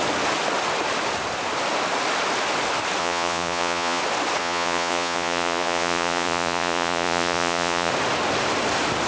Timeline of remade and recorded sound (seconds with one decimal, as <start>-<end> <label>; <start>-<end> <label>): 0.0-3.0 recorded; 3.0-4.0 remade; 4.0-4.4 recorded; 4.4-7.9 remade; 7.9-9.1 recorded